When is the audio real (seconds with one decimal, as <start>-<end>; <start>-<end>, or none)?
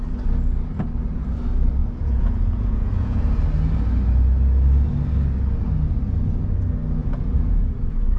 0.0-1.8; 3.2-7.0; 7.6-8.2